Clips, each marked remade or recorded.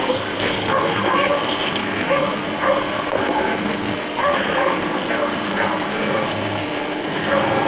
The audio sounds remade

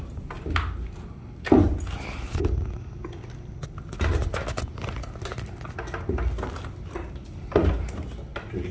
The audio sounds recorded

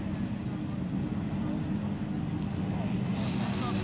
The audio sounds recorded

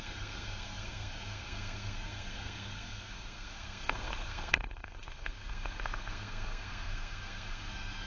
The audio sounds remade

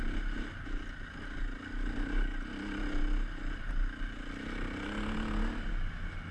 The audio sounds recorded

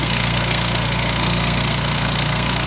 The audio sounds remade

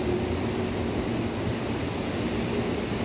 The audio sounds recorded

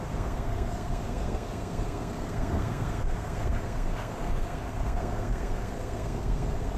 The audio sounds remade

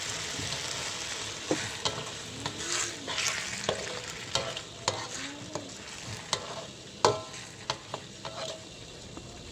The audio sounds recorded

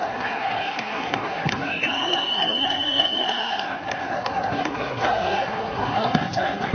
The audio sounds remade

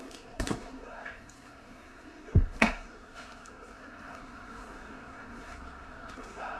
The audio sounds remade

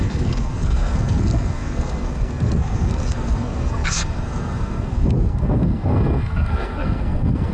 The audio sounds remade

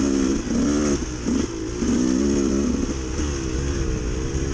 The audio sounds recorded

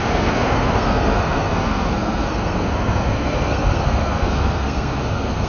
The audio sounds remade